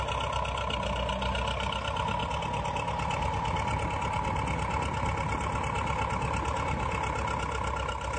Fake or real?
real